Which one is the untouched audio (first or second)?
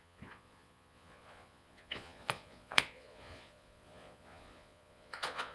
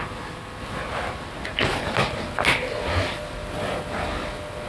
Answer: second